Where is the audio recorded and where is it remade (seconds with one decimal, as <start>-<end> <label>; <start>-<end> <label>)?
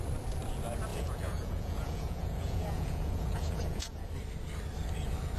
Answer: 0.0-0.9 recorded; 0.9-4.1 remade; 4.1-5.4 recorded